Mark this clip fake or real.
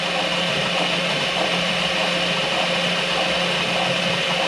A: real